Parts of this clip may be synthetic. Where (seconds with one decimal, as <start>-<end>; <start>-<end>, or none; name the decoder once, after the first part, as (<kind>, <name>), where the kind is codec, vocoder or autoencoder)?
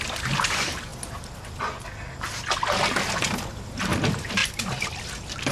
none